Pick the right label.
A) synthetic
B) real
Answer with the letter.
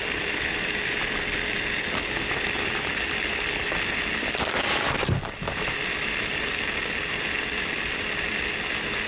A